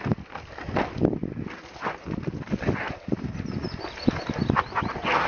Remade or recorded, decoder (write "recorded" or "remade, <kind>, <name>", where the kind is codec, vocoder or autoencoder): recorded